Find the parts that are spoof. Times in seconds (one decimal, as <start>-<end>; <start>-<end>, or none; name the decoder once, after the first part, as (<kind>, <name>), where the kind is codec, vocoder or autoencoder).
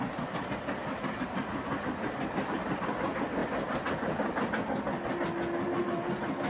none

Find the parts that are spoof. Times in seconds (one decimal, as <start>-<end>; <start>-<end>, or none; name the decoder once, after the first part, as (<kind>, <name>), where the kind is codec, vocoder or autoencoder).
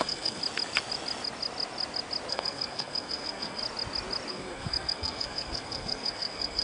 0.0-0.4 (codec, SNAC); 2.3-3.6; 4.3-6.6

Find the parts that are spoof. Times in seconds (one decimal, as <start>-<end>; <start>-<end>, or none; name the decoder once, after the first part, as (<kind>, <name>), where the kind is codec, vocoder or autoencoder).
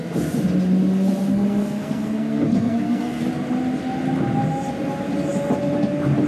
1.3-3.2 (codec, SNAC)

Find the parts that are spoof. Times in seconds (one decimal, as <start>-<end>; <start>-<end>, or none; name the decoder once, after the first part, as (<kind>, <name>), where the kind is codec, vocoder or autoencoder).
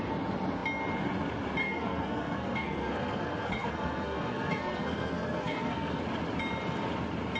1.6-6.0 (codec, SNAC)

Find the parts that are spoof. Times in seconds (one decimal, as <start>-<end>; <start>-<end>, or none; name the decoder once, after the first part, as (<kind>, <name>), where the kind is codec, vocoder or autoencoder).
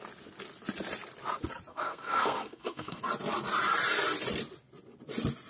1.7-3.0 (codec, SNAC)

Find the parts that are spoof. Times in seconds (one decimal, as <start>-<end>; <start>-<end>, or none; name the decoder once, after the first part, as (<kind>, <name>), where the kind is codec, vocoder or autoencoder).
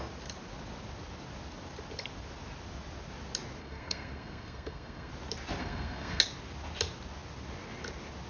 3.6-5.1 (codec, SNAC); 5.6-6.2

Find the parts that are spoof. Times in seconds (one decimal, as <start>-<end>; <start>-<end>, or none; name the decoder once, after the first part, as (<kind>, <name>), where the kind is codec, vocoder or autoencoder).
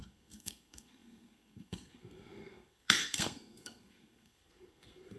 0.0-5.2 (codec, SNAC)